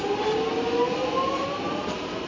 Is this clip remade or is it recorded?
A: recorded